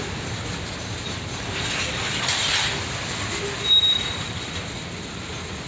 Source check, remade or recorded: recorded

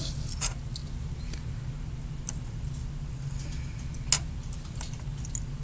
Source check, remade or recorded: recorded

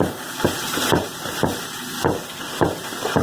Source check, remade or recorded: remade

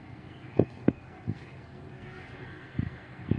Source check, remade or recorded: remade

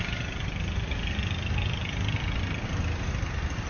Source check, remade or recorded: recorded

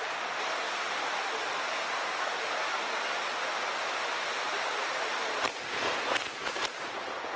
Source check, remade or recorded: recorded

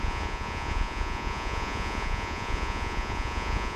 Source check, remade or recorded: remade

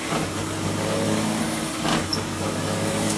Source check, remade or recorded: remade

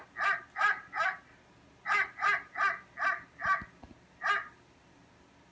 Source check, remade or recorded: recorded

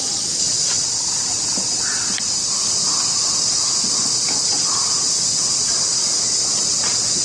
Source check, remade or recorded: recorded